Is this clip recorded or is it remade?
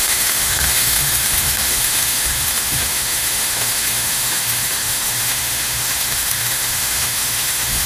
remade